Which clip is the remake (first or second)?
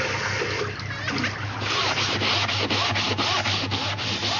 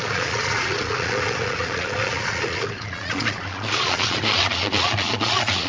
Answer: second